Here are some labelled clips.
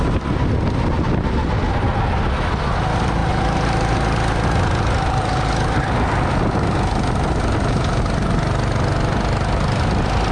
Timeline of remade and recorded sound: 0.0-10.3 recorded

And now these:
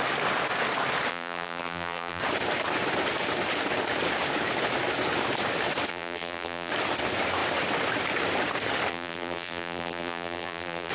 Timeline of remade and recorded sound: 0.0-1.1 recorded; 1.1-2.2 remade; 2.2-5.9 recorded; 5.9-6.7 remade; 6.7-8.9 recorded; 8.9-10.9 remade

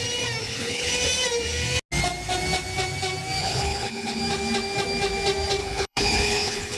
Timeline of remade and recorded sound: 0.0-0.4 recorded; 0.4-0.9 remade; 0.9-3.4 recorded; 3.4-4.2 remade; 4.2-5.6 recorded; 5.6-6.8 remade

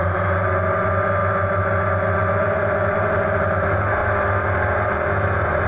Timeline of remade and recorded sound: 0.0-5.7 recorded

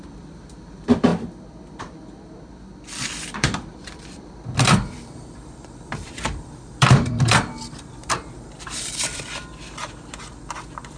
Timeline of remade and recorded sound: 0.0-1.1 remade; 1.1-3.0 recorded; 3.0-11.0 remade

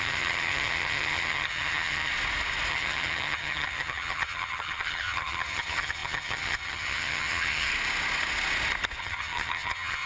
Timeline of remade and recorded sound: 0.0-2.1 remade; 2.1-2.7 recorded; 2.7-7.7 remade; 7.7-9.0 recorded; 9.0-10.1 remade